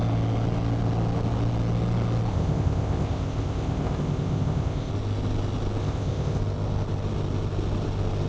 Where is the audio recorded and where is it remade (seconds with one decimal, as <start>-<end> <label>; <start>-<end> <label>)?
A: 0.0-2.3 recorded; 2.3-4.9 remade; 4.9-5.8 recorded; 5.8-6.4 remade; 6.4-8.3 recorded